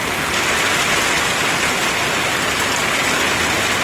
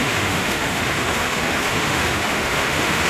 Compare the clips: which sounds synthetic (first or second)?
second